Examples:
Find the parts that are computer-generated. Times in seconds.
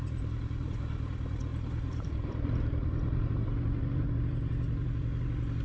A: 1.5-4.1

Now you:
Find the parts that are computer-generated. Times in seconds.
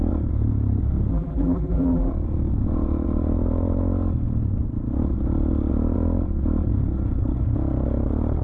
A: 1.1-2.1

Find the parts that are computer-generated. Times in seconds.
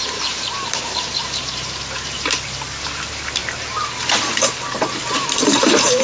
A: 0.0-3.4; 4.8-6.0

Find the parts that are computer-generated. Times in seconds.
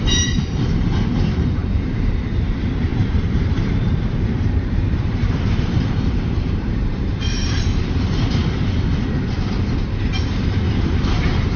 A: 0.0-8.4; 10.7-11.6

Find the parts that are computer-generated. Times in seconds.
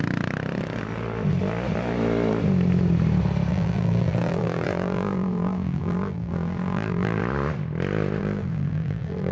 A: 3.5-7.2; 8.2-9.3